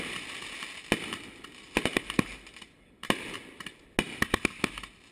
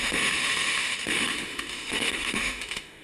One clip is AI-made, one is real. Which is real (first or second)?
first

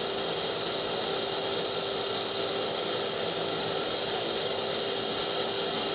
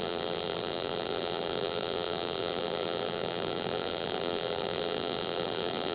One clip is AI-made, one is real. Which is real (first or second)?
first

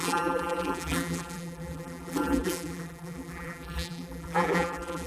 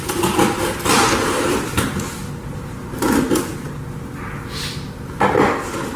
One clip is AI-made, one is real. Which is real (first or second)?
second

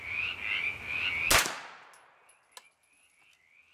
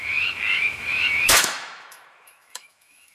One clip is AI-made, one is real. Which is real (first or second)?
first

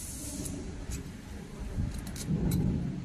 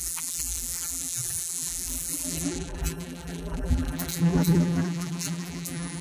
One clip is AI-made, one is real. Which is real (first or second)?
first